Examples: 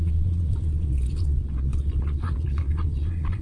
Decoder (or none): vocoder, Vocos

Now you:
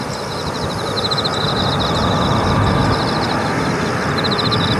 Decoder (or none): none